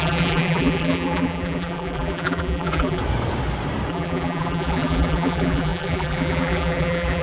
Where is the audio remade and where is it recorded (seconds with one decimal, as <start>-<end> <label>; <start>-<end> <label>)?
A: 0.0-3.0 remade; 3.0-3.9 recorded; 3.9-7.2 remade